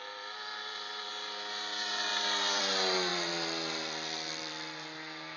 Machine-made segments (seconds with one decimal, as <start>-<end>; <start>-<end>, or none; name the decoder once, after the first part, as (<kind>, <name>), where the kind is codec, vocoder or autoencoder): 0.0-1.1 (vocoder, BigVGAN v2); 2.1-2.6; 3.1-4.5